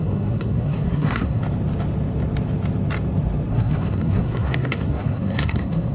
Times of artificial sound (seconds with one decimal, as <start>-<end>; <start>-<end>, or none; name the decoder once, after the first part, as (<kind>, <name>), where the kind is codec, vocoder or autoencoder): 0.0-1.4 (codec, SNAC); 3.5-5.9